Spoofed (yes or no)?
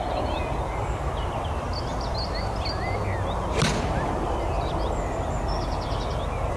no